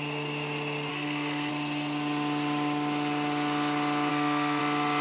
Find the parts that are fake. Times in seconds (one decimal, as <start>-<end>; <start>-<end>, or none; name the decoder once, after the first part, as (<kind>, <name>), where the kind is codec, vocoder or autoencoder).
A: 0.9-1.5 (codec, SNAC); 4.1-4.6